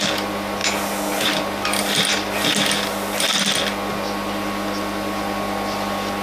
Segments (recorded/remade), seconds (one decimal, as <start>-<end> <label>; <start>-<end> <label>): 0.0-6.2 recorded